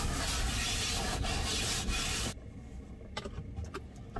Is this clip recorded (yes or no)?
yes